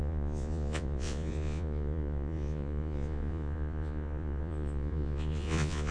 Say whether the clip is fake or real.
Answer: fake